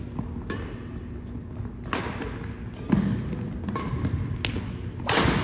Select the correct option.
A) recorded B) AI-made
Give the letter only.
A